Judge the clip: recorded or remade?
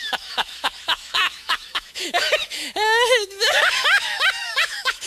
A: remade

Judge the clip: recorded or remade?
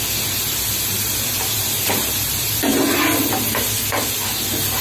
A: recorded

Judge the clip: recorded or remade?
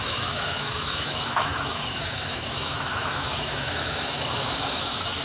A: remade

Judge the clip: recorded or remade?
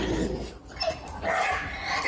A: recorded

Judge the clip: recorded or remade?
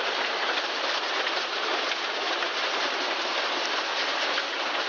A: recorded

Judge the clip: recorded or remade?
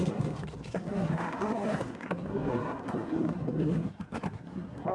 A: remade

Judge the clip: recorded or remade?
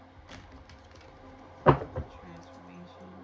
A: recorded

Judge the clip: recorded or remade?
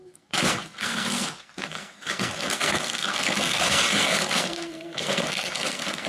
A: remade